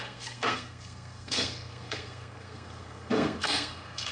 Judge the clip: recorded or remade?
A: remade